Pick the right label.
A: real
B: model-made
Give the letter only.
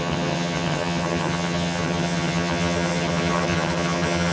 B